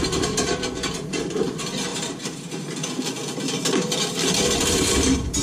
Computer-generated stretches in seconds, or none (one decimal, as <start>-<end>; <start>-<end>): 1.9-2.5